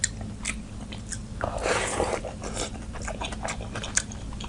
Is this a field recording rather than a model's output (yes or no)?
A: yes